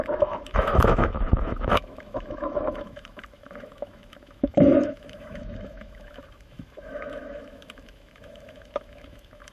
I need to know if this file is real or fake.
fake